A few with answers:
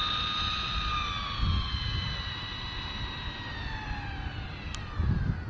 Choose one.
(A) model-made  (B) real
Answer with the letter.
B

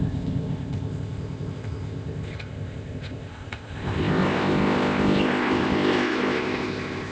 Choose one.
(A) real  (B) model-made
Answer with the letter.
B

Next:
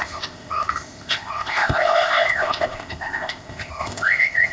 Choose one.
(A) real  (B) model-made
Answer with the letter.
B